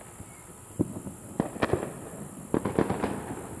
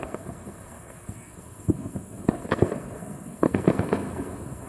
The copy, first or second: second